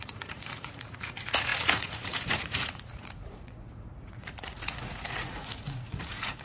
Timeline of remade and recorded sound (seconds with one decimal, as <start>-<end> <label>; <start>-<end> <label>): 0.0-6.4 remade